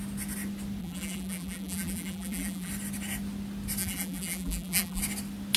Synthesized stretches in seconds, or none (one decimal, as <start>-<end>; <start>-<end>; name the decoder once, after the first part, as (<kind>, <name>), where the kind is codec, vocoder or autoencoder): 0.8-2.7 (vocoder, BigVGAN v2); 3.8-5.0